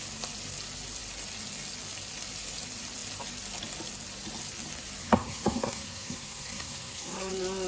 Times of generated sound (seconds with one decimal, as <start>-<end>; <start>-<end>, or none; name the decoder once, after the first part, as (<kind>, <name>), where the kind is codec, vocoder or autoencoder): 5.0-7.3 (codec, SNAC)